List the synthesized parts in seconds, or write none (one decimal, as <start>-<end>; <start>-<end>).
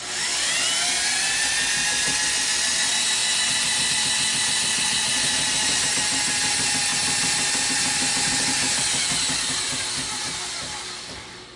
none